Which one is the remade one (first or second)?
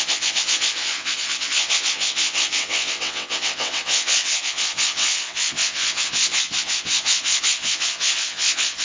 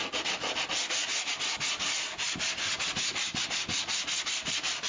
first